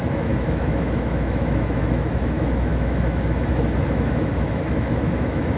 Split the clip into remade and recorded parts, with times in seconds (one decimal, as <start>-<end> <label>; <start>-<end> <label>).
0.0-5.6 remade